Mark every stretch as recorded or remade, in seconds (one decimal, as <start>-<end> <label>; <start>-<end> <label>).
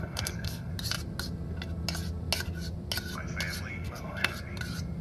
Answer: 0.0-0.7 remade; 0.7-3.7 recorded; 3.7-4.3 remade; 4.3-5.0 recorded